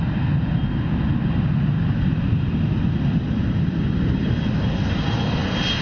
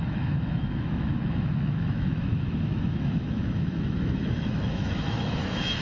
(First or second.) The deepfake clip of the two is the second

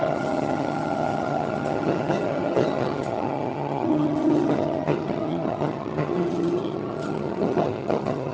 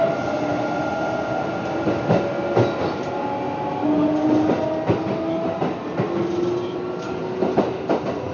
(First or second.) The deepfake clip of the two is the first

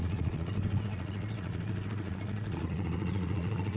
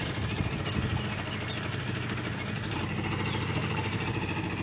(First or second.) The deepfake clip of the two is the first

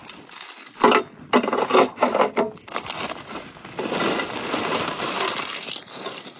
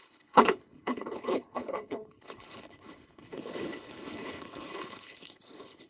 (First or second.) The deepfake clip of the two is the second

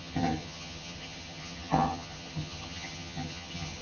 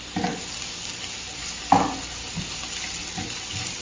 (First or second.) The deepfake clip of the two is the first